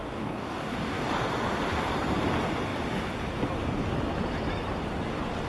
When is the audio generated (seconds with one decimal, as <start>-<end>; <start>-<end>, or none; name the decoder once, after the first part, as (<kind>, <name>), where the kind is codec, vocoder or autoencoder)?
0.0-1.1 (codec, DAC)